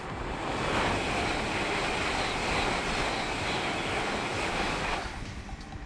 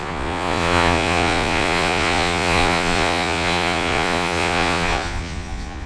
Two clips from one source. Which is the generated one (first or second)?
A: second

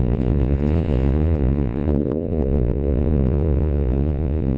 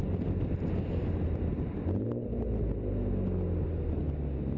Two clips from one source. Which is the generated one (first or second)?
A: first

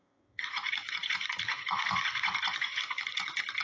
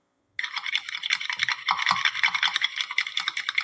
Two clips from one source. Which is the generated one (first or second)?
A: first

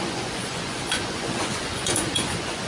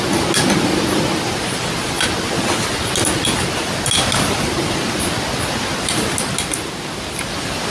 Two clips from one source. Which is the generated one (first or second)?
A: first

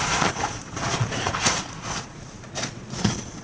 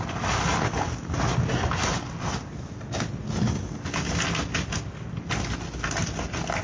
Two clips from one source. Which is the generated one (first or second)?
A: first